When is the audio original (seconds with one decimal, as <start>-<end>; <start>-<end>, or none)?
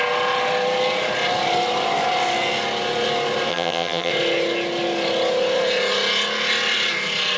0.0-3.5; 4.1-7.4